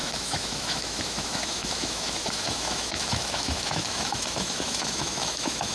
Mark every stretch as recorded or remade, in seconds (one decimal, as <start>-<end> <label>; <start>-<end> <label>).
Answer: 0.0-5.7 remade